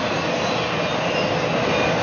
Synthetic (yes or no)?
no